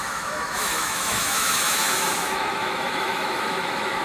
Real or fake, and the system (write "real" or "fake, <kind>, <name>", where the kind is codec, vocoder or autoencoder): fake, autoencoder, DAC-VAE